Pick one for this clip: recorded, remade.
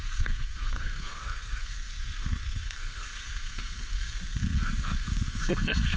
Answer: remade